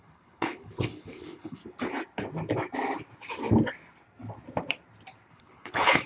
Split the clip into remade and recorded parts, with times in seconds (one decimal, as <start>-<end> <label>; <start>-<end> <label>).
0.0-1.6 remade; 1.6-5.3 recorded; 5.3-6.1 remade